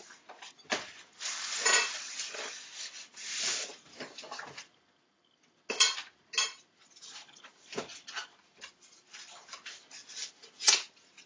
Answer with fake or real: real